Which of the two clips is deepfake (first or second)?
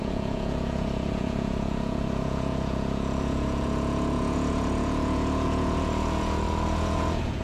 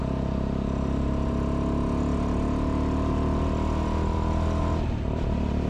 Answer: first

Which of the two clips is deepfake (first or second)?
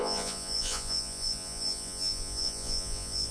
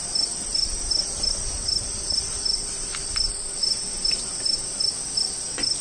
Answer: first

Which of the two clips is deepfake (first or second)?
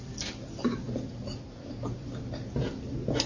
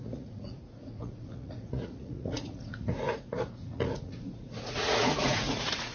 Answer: second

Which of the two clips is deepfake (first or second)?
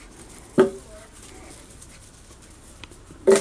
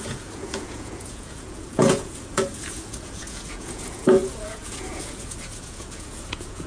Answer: second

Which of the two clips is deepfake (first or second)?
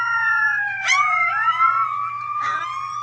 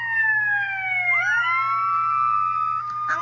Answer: first